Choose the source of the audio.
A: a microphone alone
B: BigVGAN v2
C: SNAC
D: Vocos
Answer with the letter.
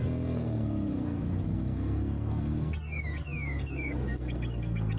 C